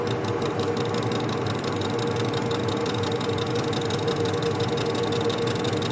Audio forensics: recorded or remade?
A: recorded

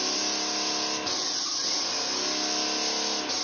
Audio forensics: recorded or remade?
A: recorded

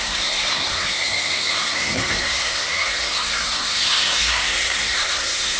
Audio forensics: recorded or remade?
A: remade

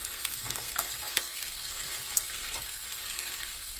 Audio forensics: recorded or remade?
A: remade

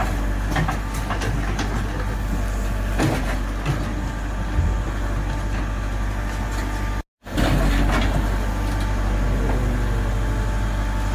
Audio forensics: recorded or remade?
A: recorded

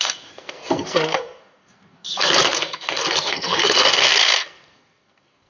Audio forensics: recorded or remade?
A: remade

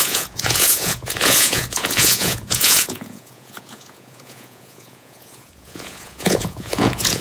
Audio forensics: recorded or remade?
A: remade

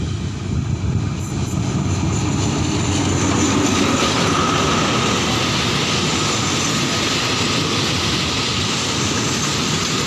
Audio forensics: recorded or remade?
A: recorded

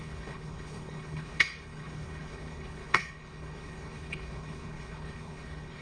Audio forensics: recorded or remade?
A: remade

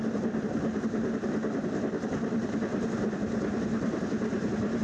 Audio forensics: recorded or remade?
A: recorded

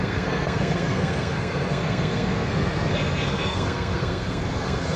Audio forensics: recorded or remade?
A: remade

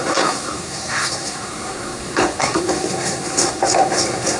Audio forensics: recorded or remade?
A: remade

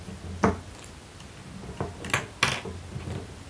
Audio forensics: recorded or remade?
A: recorded